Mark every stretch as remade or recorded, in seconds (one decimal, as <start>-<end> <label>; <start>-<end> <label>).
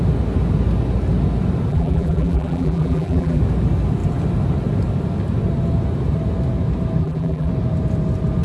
0.0-1.7 recorded; 1.7-3.4 remade; 3.4-7.0 recorded; 7.0-7.5 remade; 7.5-8.4 recorded